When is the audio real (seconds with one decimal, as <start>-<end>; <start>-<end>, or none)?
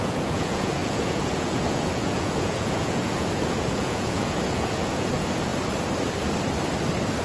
5.5-7.2